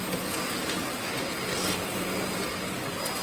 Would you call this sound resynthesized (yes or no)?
no